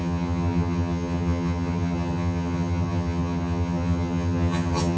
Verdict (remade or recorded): remade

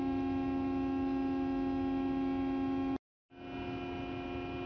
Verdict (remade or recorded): recorded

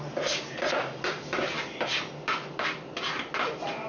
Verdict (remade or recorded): recorded